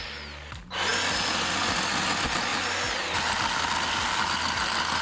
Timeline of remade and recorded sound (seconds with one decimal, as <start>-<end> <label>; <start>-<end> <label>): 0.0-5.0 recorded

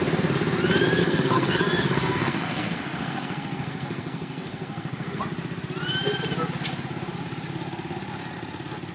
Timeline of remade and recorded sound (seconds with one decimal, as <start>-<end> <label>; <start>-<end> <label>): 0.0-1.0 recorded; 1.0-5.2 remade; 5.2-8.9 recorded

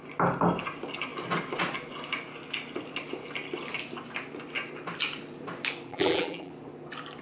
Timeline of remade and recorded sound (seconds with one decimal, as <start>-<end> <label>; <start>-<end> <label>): 0.0-5.9 recorded; 5.9-6.5 remade; 6.5-7.2 recorded